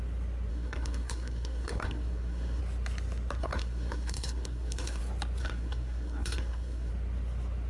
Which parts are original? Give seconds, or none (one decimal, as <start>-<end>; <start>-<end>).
0.0-0.5; 2.6-3.4; 5.0-5.4; 6.9-7.7